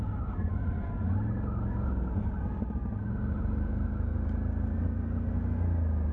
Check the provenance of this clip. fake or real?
real